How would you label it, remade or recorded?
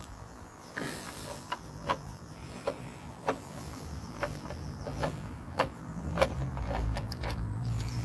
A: remade